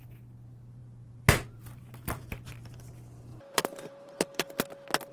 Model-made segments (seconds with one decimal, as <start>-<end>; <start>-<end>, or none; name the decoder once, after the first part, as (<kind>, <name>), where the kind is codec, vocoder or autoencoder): 0.8-2.8 (vocoder, BigVGAN v2); 3.3-4.6

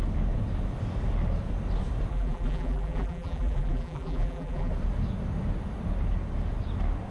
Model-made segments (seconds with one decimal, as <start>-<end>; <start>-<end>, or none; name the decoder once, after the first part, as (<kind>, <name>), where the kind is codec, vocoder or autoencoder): 2.1-4.7 (vocoder, BigVGAN v2)

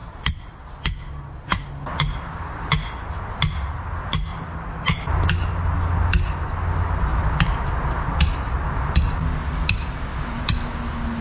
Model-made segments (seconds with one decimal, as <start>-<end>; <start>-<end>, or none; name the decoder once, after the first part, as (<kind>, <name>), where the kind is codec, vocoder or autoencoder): 0.0-0.6 (vocoder, WaveNeXt)

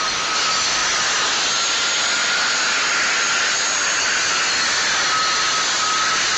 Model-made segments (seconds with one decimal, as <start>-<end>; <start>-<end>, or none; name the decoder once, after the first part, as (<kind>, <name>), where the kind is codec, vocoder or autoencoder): none

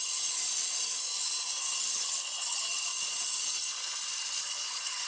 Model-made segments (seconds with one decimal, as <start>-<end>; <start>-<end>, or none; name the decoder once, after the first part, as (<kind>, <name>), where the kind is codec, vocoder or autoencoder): 0.0-0.4 (vocoder, HiFi-GAN); 1.8-2.9; 4.4-5.1

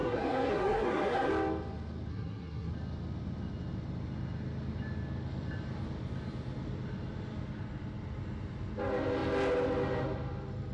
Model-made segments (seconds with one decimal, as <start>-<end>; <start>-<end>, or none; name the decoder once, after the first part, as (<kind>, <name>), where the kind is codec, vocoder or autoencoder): 0.0-1.3 (codec, SNAC); 2.1-2.7